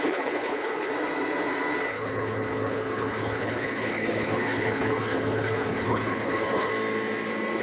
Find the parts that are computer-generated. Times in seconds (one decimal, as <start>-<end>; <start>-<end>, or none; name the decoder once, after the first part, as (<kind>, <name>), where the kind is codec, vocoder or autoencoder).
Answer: 0.0-0.9 (codec, HILCodec); 1.9-6.7